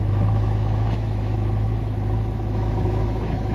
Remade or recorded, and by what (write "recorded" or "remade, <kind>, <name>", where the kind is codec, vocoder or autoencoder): remade, autoencoder, DAC-VAE